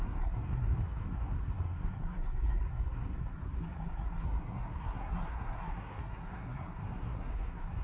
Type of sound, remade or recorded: remade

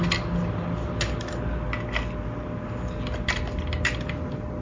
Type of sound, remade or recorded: recorded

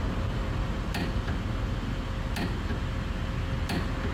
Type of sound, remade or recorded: recorded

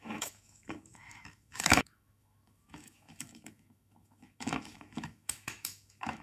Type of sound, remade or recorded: remade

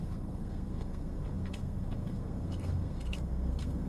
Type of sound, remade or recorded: remade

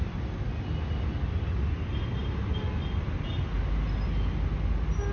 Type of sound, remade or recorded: recorded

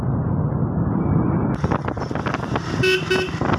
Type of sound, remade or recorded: recorded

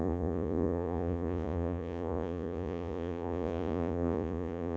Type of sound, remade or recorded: remade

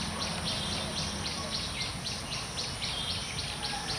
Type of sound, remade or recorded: recorded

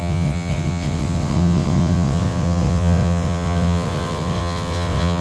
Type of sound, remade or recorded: remade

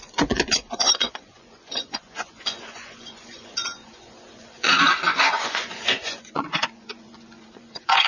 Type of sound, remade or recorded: remade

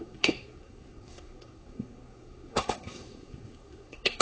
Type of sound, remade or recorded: remade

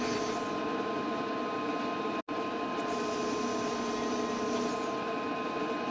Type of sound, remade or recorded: recorded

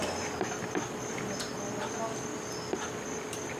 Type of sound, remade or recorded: recorded